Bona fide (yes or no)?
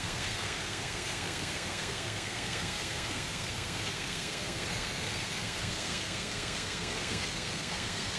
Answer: no